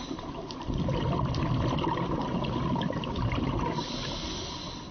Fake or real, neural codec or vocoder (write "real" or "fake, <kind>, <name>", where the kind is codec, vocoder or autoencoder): real